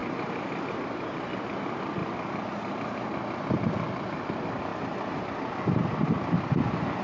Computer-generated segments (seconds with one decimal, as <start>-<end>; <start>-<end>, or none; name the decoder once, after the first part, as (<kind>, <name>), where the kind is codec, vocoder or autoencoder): none